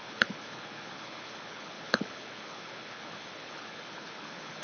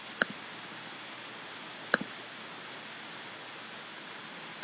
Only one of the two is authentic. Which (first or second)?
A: second